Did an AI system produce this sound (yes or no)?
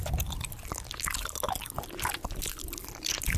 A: no